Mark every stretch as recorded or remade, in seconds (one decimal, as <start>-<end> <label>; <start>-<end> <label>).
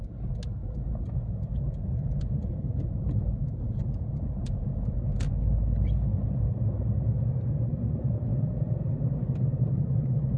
0.0-0.6 recorded; 0.6-5.3 remade; 5.3-8.3 recorded; 8.3-8.9 remade; 8.9-10.4 recorded